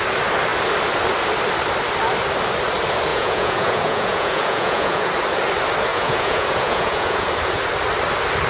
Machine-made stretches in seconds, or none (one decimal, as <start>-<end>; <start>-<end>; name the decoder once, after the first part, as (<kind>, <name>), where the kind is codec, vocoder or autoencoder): 3.1-5.1 (vocoder, Vocos); 5.9-7.3